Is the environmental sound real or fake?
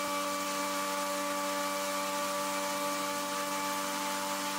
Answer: real